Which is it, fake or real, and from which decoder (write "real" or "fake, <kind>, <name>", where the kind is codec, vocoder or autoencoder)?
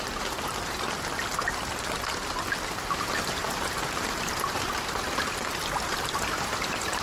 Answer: real